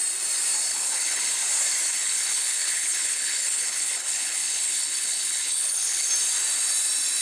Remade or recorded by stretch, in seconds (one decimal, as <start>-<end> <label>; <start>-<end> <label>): 0.0-0.7 recorded; 0.7-1.2 remade; 1.2-1.9 recorded; 1.9-6.1 remade; 6.1-7.2 recorded